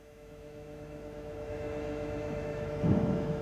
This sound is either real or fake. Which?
fake